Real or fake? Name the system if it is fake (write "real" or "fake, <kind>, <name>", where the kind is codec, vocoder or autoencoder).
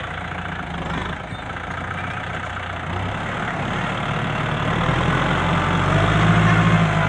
real